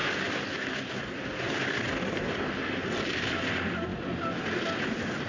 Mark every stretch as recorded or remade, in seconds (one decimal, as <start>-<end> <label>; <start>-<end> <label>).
0.0-3.2 remade; 3.2-5.3 recorded